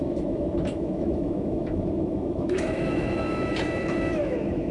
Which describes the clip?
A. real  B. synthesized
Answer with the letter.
B